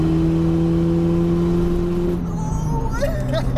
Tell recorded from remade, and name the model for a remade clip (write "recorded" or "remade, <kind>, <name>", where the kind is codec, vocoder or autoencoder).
recorded